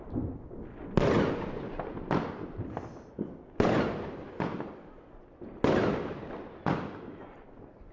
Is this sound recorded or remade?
recorded